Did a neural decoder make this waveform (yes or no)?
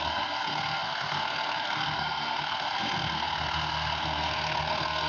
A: yes